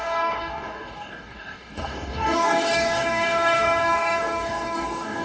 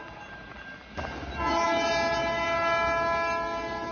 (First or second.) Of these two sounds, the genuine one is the second